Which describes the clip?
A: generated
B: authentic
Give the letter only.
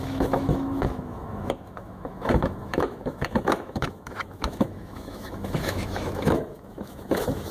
A